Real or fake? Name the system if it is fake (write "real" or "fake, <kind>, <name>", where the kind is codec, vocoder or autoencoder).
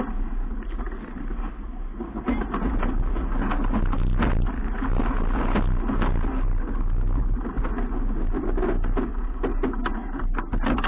real